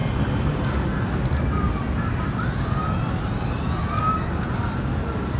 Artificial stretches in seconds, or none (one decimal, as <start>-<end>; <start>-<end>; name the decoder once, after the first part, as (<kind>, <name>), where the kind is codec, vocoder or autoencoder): none